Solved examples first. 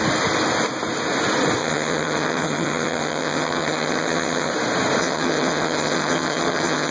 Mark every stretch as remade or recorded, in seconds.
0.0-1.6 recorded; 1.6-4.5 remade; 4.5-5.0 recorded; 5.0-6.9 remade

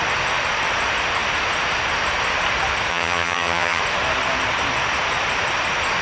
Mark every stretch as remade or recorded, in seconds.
0.0-2.9 recorded; 2.9-3.8 remade; 3.8-6.0 recorded